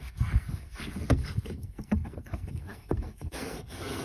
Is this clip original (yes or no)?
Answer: no